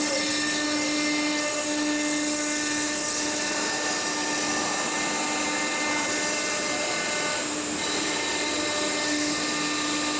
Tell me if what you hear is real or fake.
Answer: real